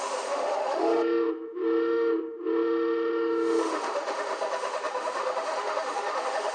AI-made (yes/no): yes